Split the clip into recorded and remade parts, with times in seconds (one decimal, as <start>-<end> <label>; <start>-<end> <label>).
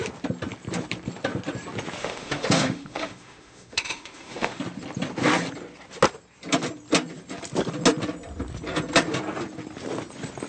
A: 0.0-2.0 recorded; 2.0-4.6 remade; 4.6-10.5 recorded